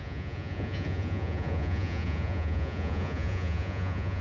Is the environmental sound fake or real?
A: fake